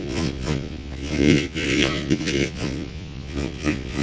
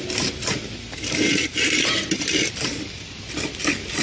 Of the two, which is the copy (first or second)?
first